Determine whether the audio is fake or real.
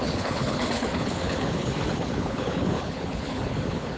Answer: fake